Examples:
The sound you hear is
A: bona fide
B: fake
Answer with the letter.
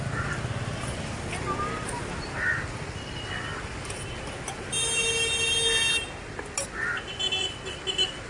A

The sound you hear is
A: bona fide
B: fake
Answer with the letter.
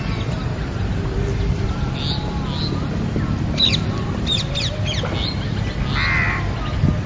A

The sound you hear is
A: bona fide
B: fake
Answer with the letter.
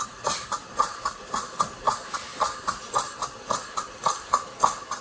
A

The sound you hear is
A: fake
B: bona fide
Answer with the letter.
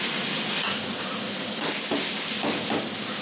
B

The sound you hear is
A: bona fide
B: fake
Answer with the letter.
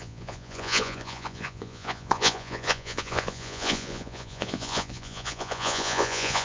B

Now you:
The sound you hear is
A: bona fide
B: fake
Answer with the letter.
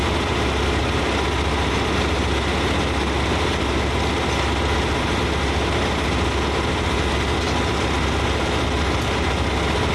A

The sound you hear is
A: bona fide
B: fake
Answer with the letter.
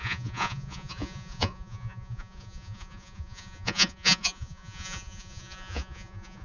B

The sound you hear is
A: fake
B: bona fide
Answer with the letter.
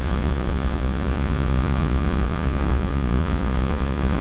A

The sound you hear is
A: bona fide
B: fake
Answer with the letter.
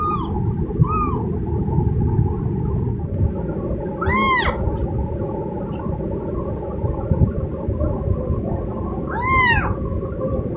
A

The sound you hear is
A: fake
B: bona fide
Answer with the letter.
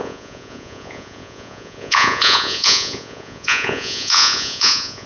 A